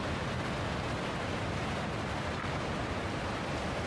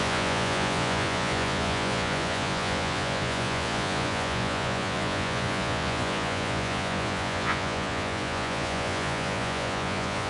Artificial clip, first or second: second